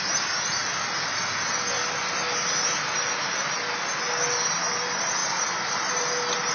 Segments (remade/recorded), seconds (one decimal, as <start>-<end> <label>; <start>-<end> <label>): 0.0-5.2 recorded; 5.2-6.0 remade; 6.0-6.5 recorded